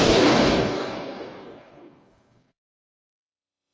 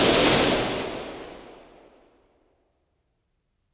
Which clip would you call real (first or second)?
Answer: second